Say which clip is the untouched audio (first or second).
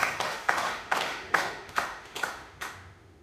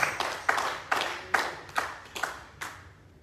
second